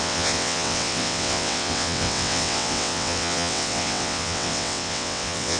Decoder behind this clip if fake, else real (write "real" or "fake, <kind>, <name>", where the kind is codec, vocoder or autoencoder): fake, vocoder, WaveNeXt